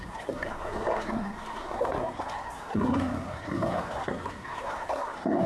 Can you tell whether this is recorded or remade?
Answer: remade